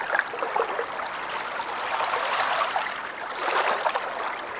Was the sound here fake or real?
real